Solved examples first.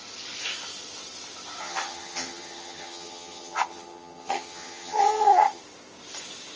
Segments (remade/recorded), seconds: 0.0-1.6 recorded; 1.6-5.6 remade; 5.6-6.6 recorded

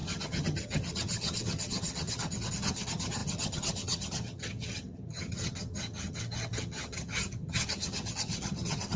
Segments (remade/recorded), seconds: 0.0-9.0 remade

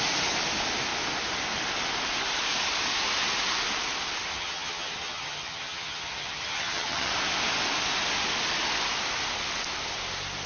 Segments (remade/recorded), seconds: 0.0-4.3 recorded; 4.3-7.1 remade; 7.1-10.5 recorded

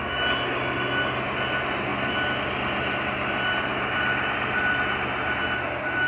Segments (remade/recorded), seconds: 0.0-6.1 recorded

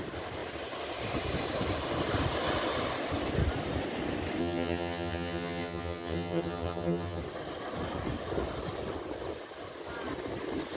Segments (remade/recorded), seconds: 0.0-4.4 recorded; 4.4-7.2 remade; 7.2-10.8 recorded

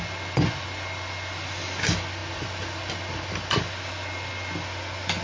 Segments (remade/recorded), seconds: 0.0-5.2 recorded

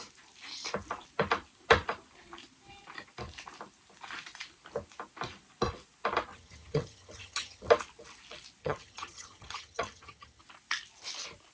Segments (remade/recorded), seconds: 0.0-6.3 recorded; 6.3-7.7 remade; 7.7-8.6 recorded; 8.6-10.4 remade; 10.4-11.5 recorded

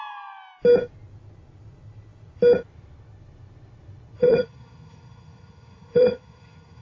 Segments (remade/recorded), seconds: 0.0-4.2 recorded; 4.2-6.8 remade